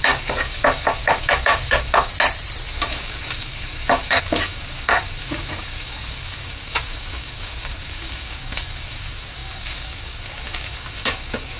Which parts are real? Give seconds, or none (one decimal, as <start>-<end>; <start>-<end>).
2.1-2.7